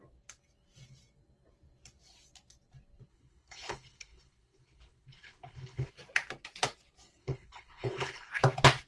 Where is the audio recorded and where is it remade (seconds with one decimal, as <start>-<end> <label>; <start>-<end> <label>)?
0.0-3.1 recorded; 3.1-5.9 remade; 5.9-7.2 recorded; 7.2-8.3 remade; 8.3-8.9 recorded